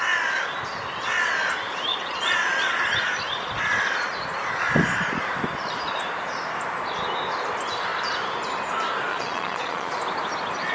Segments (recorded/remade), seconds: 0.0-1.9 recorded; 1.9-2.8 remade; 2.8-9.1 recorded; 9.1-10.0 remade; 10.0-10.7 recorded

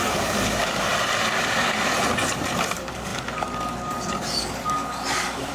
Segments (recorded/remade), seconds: 0.0-0.9 remade; 0.9-2.7 recorded; 2.7-5.5 remade

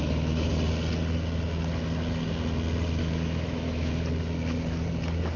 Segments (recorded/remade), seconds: 0.0-0.5 remade; 0.5-3.0 recorded; 3.0-3.9 remade; 3.9-5.4 recorded

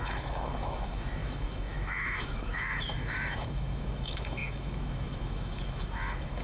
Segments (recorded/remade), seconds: 0.0-6.4 remade